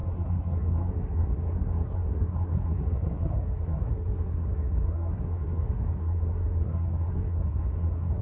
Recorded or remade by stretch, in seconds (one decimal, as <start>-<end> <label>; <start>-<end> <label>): 0.0-8.2 remade